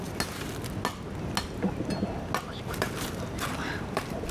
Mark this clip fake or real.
real